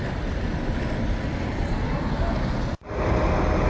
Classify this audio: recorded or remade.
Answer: recorded